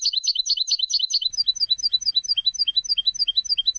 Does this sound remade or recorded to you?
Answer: recorded